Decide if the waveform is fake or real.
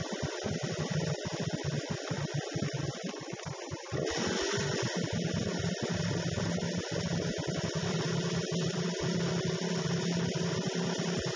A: real